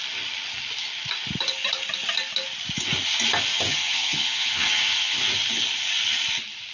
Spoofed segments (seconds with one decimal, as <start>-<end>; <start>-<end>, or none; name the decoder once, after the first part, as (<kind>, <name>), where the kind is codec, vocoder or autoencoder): 3.7-5.2 (vocoder, HiFi-GAN)